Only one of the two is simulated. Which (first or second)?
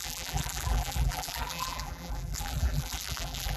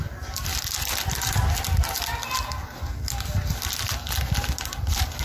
first